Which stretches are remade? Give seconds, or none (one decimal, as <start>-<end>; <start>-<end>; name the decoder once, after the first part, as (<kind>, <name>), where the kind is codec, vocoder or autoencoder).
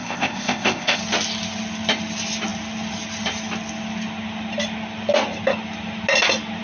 0.0-1.0 (codec, ZipCodec)